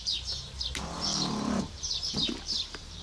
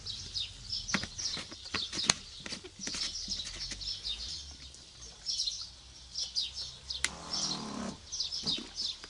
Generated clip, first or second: first